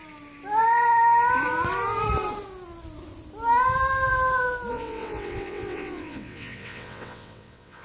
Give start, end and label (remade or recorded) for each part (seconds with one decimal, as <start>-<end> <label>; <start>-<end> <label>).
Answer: 0.0-4.7 recorded; 4.7-7.8 remade